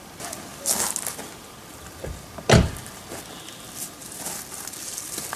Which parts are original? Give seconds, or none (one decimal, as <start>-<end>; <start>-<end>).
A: 0.0-5.4